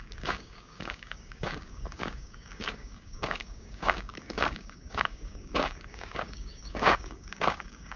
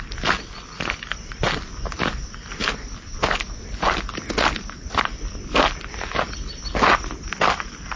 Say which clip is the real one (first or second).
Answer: second